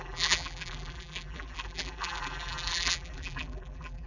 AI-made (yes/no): yes